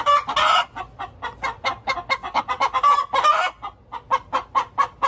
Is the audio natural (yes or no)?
yes